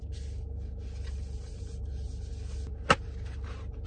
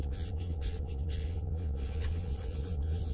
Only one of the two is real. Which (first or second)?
first